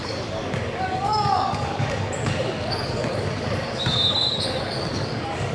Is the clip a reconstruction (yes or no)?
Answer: yes